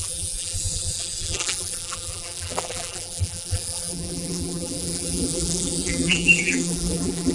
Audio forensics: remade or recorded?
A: remade